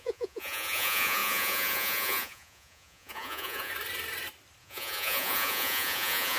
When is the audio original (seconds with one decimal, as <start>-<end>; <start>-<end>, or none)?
3.7-4.6